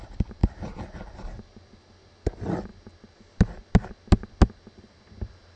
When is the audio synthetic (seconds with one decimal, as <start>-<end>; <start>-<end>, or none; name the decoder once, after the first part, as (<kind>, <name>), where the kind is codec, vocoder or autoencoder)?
none